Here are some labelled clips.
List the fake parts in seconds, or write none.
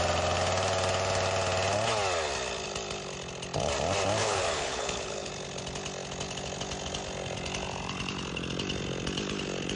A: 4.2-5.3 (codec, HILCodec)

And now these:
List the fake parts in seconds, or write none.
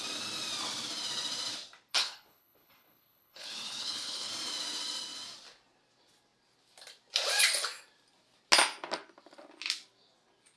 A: 1.9-4.3 (codec, HILCodec)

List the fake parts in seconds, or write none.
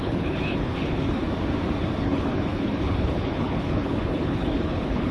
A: 0.0-1.2 (codec, HILCodec); 2.0-5.1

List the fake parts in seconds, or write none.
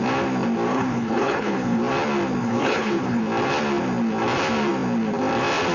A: 0.7-1.8 (codec, HILCodec); 2.4-3.2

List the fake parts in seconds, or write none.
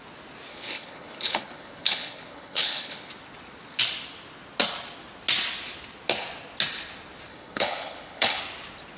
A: 0.5-3.1 (codec, HILCodec); 7.3-8.4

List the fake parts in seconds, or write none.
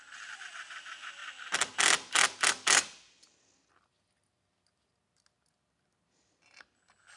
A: none